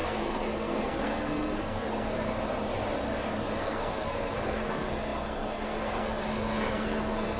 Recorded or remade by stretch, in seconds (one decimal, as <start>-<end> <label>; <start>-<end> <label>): 0.0-2.3 remade; 2.3-3.6 recorded; 3.6-7.4 remade